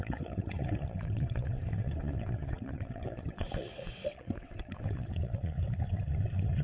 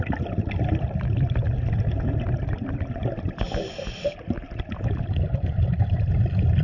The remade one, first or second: first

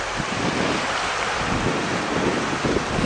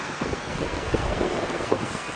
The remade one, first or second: second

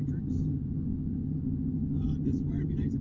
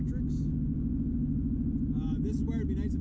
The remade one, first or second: first